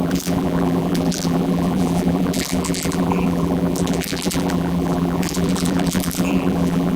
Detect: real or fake fake